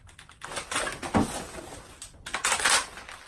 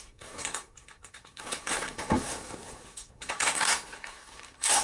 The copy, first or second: second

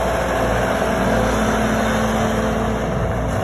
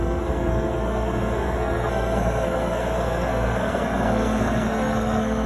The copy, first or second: second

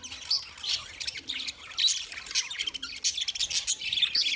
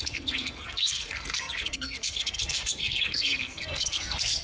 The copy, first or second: second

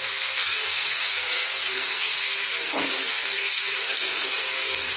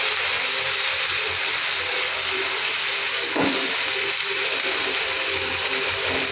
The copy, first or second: first